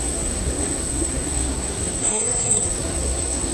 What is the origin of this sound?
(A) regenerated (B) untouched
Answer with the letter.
A